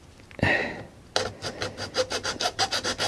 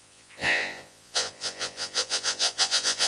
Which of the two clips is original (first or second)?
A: first